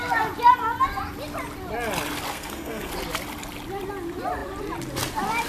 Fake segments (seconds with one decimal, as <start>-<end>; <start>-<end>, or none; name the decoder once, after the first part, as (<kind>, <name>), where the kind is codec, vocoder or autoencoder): 2.3-2.9 (codec, SNAC)